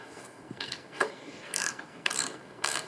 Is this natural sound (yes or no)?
no